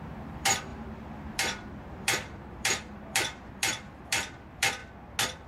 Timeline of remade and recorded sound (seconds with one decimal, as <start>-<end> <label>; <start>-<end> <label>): 0.0-4.8 remade; 4.8-5.5 recorded